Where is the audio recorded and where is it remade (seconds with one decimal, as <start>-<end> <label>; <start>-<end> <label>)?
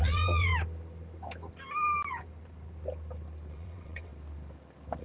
0.0-0.5 remade; 0.5-3.5 recorded; 3.5-4.1 remade; 4.1-5.0 recorded